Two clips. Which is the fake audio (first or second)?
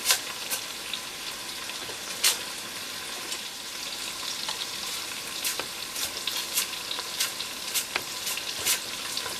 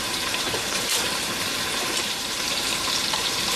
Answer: second